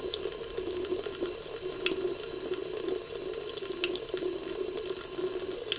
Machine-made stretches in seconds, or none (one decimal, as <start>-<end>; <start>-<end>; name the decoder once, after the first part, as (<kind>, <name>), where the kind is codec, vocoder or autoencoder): none